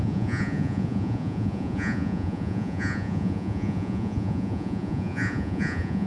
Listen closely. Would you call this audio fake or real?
fake